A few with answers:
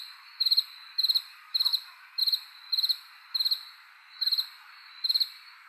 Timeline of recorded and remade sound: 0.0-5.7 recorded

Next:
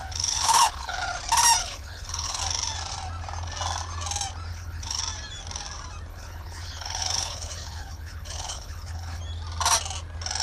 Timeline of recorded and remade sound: 0.0-1.0 remade; 1.0-1.6 recorded; 1.6-2.4 remade; 2.4-4.5 recorded; 4.5-5.0 remade; 5.0-6.1 recorded; 6.1-9.2 remade; 9.2-10.4 recorded

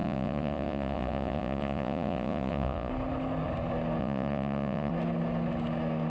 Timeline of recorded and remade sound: 0.0-2.9 remade; 2.9-4.0 recorded; 4.0-4.9 remade; 4.9-6.1 recorded

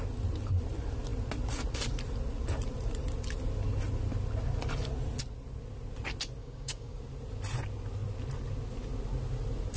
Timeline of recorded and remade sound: 0.0-6.4 recorded; 6.4-7.0 remade; 7.0-9.8 recorded